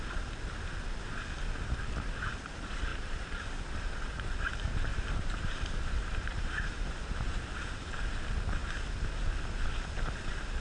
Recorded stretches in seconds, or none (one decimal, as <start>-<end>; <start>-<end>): 0.0-2.9; 4.5-4.9; 7.4-10.6